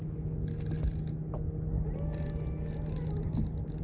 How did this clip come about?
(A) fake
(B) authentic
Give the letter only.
B